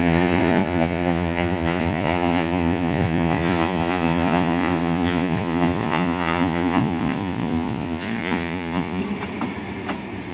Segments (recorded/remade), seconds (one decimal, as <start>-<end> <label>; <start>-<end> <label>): 0.0-9.0 remade; 9.0-10.3 recorded